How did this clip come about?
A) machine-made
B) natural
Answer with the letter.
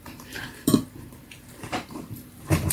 A